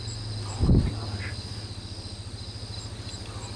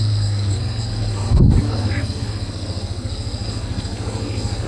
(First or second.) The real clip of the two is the first